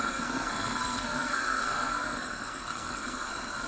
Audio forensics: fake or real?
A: fake